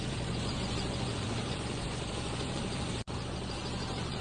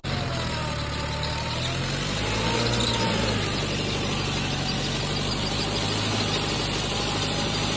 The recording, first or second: second